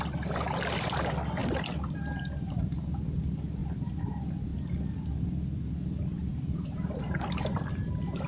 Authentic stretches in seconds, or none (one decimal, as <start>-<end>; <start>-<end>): 0.0-1.4; 2.5-3.6; 4.1-6.3